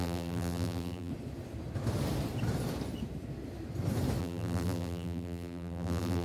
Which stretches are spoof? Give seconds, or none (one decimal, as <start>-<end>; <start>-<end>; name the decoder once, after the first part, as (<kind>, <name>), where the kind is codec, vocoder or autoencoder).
0.0-1.1 (vocoder, BigVGAN v2); 4.2-6.2

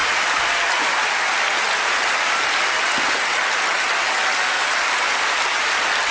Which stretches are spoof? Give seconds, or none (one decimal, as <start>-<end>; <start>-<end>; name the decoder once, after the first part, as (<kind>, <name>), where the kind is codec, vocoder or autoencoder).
none

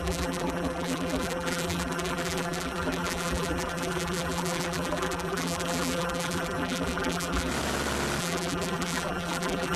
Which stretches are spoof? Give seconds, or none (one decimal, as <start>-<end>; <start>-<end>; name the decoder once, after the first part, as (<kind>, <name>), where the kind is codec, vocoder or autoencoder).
0.0-7.5 (vocoder, BigVGAN v2); 8.2-9.8

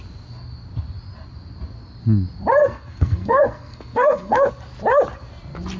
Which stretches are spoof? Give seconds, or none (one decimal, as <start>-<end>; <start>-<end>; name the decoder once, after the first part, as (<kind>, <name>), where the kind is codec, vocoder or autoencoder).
2.6-4.5 (codec, SNAC)

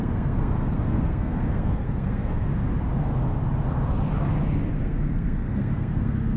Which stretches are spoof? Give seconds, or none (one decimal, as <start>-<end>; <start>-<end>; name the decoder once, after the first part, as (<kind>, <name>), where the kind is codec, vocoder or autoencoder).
0.0-2.5 (codec, SNAC); 4.7-6.4

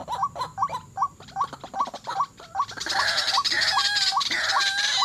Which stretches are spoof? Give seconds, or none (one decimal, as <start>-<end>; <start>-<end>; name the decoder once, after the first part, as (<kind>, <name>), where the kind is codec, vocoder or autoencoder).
none